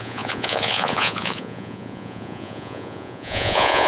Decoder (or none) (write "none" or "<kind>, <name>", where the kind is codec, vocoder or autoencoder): vocoder, Vocos